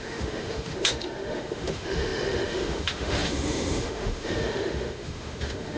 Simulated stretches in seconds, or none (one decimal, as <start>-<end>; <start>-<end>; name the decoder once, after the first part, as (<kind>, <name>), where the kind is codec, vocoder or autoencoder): 0.0-5.8 (autoencoder, DAC-VAE)